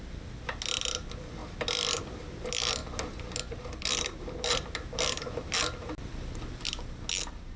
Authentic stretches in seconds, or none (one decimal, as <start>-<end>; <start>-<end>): 0.0-7.6